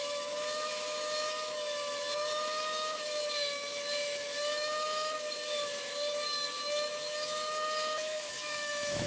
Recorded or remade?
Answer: remade